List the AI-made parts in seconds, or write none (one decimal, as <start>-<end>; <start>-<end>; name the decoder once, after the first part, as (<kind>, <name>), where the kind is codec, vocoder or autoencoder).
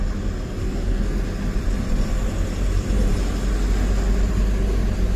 0.6-1.2 (codec, SNAC)